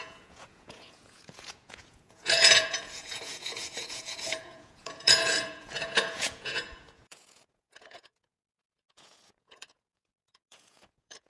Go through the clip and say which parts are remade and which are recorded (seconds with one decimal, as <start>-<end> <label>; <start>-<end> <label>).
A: 0.0-11.3 remade